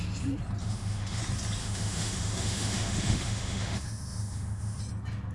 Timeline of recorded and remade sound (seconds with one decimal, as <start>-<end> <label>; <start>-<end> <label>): 0.0-0.6 recorded; 0.6-1.2 remade; 1.2-1.6 recorded; 1.6-4.8 remade; 4.8-5.3 recorded